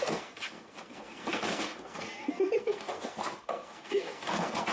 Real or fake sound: fake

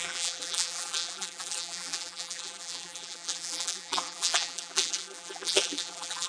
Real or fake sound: fake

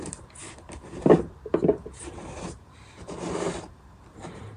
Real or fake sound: fake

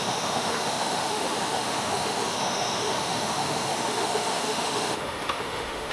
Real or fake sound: fake